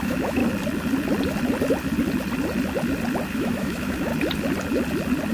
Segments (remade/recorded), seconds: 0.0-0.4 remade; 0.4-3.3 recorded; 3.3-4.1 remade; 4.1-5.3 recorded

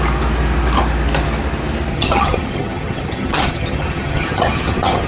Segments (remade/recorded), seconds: 0.0-1.9 recorded; 1.9-5.1 remade